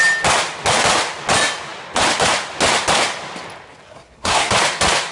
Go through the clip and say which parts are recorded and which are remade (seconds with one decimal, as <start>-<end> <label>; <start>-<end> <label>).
0.0-3.9 recorded; 3.9-4.5 remade; 4.5-5.1 recorded